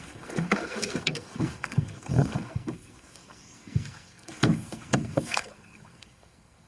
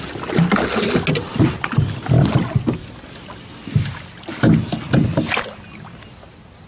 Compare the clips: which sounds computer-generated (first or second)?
first